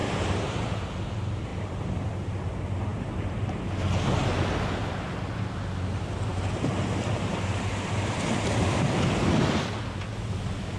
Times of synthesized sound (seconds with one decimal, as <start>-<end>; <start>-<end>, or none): 0.0-0.8; 2.9-3.6; 6.3-8.9